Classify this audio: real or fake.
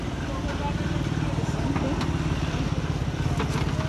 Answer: real